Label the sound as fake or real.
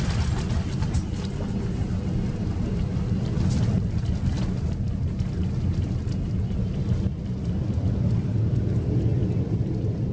real